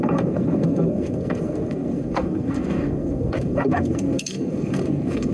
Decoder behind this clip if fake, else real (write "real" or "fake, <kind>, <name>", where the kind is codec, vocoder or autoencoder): fake, codec, SNAC